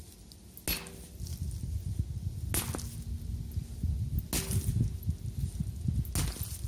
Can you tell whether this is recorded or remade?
recorded